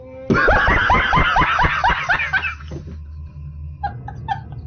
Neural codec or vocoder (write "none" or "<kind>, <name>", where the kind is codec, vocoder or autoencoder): none